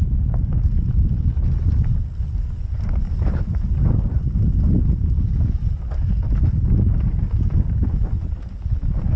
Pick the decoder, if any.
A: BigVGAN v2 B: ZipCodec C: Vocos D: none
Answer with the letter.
D